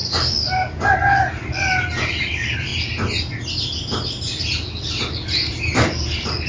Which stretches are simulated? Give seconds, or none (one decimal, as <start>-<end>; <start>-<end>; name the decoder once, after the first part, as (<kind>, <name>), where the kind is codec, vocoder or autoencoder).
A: none